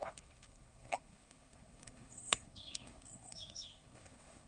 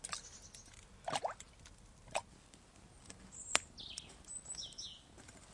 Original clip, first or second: second